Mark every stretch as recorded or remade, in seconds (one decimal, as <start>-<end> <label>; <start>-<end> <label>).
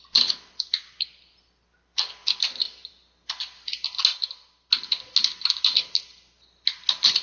0.0-7.2 recorded